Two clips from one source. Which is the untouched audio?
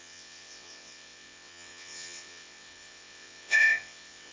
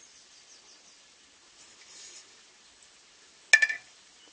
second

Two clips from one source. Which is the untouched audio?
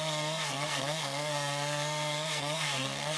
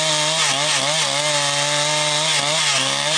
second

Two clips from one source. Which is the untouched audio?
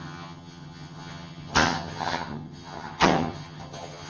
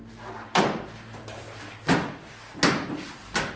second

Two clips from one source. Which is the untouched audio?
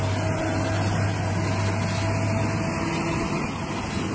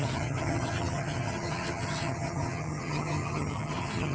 first